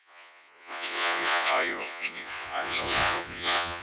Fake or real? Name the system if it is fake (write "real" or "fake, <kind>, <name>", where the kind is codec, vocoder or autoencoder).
fake, vocoder, Vocos